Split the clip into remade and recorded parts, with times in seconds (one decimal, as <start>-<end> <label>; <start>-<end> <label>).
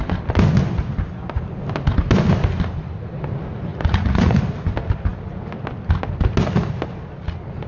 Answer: 0.0-3.7 recorded; 3.7-4.4 remade; 4.4-7.7 recorded